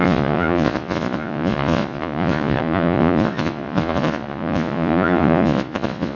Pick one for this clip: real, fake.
fake